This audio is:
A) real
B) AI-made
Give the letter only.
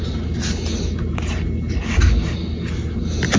A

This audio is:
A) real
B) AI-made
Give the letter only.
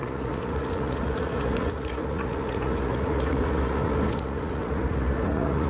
B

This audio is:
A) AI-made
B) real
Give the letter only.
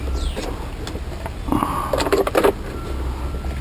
B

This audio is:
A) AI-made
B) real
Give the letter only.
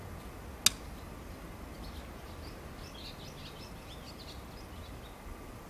B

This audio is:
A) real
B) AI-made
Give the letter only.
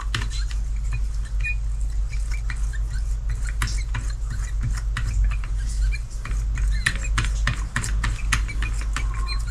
A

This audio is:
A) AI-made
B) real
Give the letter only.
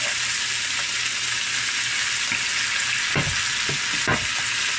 B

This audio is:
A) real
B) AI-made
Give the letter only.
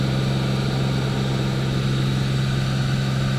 A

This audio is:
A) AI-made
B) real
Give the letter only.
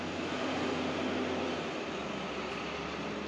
B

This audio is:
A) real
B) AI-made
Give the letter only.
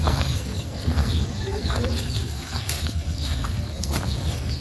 B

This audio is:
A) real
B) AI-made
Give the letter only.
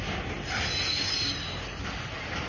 A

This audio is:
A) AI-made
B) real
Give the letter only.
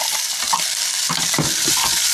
B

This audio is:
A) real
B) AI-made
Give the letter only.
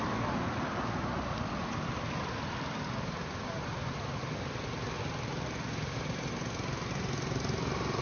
A